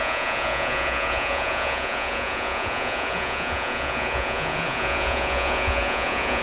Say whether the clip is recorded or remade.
remade